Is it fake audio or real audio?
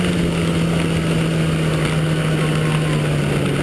real